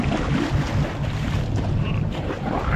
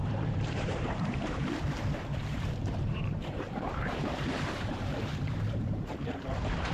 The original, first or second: first